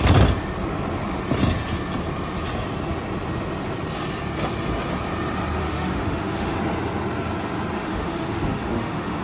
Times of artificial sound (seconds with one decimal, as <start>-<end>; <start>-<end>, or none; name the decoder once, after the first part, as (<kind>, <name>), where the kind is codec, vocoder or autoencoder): 5.6-6.6 (autoencoder, DAC-VAE); 7.8-9.2